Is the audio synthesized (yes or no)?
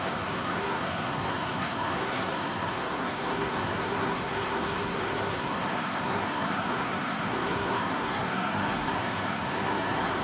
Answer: yes